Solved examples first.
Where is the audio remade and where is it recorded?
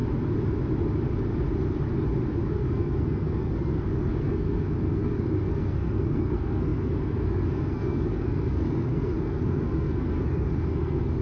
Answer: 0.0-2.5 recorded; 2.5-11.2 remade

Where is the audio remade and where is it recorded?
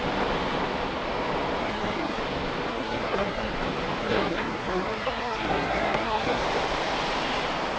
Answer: 0.0-1.6 recorded; 1.6-2.2 remade; 2.2-2.7 recorded; 2.7-3.5 remade; 3.5-4.0 recorded; 4.0-6.4 remade; 6.4-7.8 recorded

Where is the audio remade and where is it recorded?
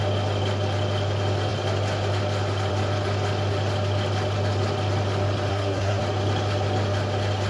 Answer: 0.0-5.5 recorded; 5.5-6.0 remade; 6.0-7.5 recorded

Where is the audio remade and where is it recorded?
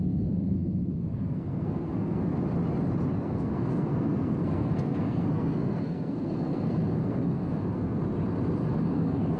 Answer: 0.0-2.3 remade; 2.3-3.2 recorded; 3.2-8.0 remade; 8.0-8.8 recorded; 8.8-9.4 remade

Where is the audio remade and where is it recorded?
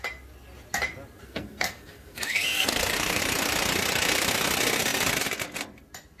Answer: 0.0-1.2 recorded; 1.2-3.2 remade; 3.2-6.2 recorded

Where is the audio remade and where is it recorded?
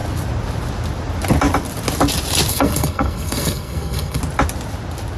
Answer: 0.0-2.5 recorded; 2.5-4.2 remade; 4.2-5.2 recorded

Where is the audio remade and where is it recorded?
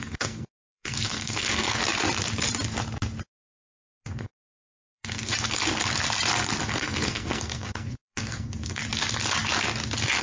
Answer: 0.0-1.8 remade; 1.8-3.9 recorded; 3.9-5.3 remade; 5.3-6.7 recorded; 6.7-8.8 remade; 8.8-10.2 recorded